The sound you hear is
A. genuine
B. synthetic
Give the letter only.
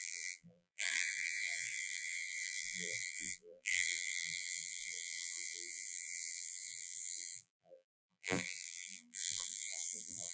B